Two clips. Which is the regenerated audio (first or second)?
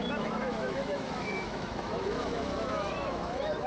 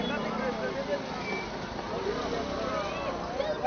first